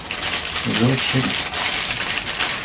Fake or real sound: real